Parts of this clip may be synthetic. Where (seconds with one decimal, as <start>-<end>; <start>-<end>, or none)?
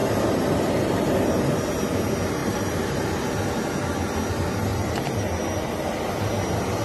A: 0.0-1.1; 2.4-3.2; 4.7-5.7